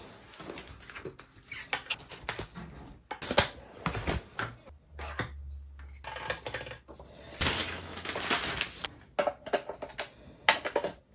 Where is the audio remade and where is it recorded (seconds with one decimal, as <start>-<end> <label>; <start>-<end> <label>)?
0.0-7.6 recorded; 7.6-8.1 remade; 8.1-11.1 recorded